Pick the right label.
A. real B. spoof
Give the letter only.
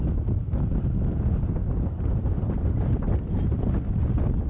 A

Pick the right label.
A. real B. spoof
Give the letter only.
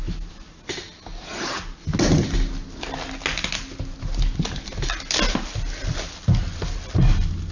A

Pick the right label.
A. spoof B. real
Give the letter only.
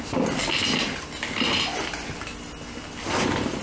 B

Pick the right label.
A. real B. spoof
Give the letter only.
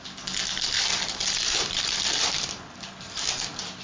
B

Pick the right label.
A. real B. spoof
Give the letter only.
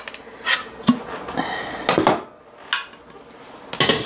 A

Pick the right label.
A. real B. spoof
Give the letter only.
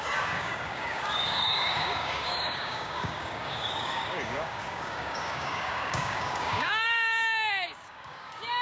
B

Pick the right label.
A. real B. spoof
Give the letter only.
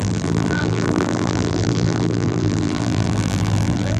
B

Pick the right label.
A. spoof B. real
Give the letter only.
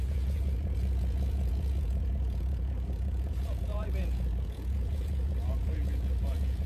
A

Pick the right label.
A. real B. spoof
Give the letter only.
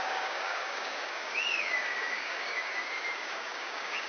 B